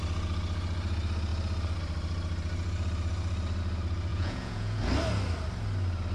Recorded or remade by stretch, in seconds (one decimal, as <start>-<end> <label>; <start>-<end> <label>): 0.0-4.1 recorded; 4.1-4.8 remade; 4.8-6.1 recorded

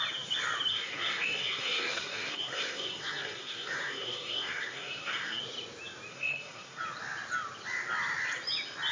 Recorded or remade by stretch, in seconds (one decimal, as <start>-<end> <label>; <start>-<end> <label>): 0.0-0.7 recorded; 0.7-5.4 remade; 5.4-6.1 recorded; 6.1-6.8 remade; 6.8-8.9 recorded

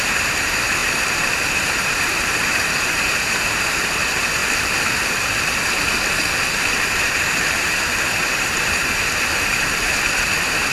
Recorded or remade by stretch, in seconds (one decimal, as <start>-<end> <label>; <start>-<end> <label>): 0.0-4.4 remade; 4.4-6.7 recorded; 6.7-10.7 remade